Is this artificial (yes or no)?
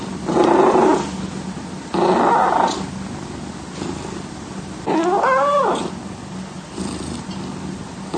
no